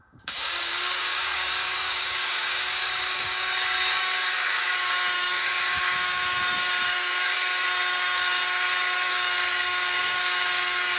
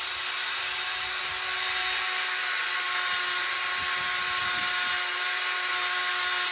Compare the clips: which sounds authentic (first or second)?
second